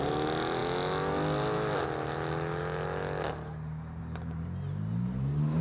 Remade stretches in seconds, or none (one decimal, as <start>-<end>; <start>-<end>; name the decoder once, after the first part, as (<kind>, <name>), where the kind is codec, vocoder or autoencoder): none